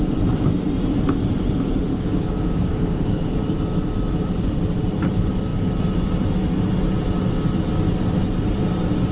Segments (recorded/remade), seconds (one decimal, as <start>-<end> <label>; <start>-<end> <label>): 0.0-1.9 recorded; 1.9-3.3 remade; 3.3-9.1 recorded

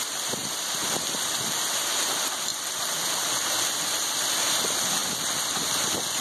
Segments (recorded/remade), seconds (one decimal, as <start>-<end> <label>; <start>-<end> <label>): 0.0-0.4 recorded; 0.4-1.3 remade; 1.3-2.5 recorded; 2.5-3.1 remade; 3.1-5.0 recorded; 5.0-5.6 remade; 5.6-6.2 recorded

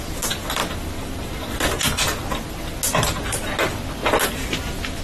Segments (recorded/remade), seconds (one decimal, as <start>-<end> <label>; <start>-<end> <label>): 0.0-5.0 recorded